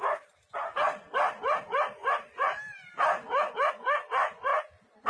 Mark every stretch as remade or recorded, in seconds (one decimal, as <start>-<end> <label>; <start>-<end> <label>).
0.0-5.1 recorded